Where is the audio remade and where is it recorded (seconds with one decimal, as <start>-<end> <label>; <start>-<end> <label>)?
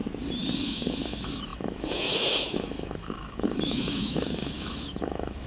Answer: 0.0-0.6 recorded; 0.6-5.5 remade